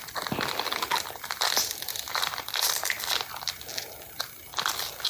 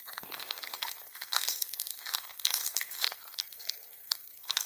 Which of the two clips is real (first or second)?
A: first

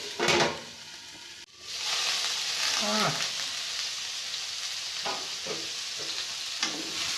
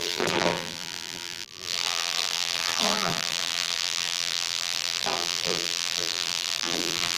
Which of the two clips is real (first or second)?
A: first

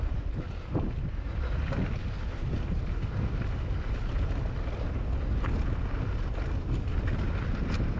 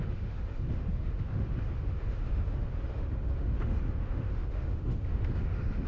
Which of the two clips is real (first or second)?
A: first